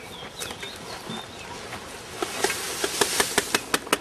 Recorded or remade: recorded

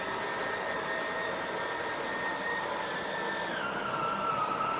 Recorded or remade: recorded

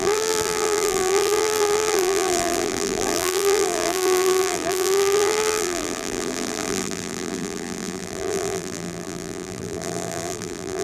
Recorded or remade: remade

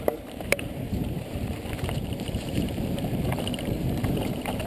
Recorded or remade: remade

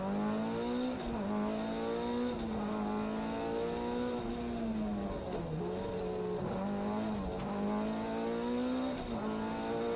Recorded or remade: recorded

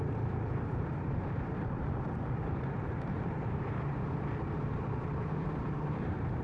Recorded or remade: remade